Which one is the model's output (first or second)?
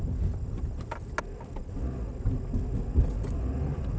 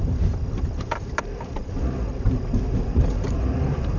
second